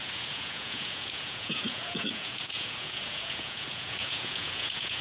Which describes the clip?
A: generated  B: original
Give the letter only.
A